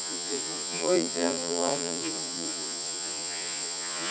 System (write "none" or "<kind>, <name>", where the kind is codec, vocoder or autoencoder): vocoder, Vocos